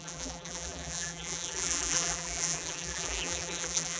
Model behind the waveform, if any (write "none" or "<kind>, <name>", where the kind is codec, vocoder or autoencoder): vocoder, BigVGAN v2